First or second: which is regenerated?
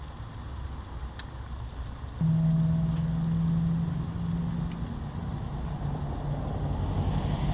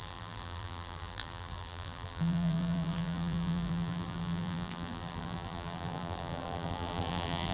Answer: second